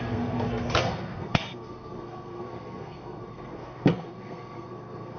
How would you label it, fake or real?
fake